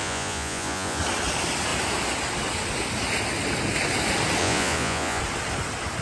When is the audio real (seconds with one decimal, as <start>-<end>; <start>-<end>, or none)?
1.0-4.4; 5.2-6.0